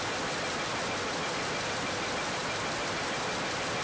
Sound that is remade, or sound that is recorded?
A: recorded